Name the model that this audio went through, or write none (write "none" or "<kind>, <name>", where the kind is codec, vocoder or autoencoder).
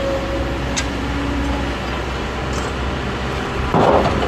none